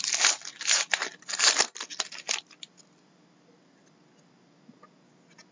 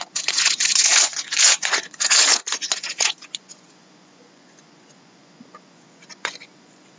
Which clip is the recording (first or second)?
first